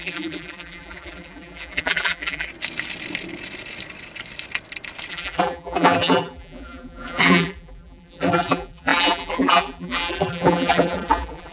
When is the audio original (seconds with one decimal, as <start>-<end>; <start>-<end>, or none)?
2.5-5.1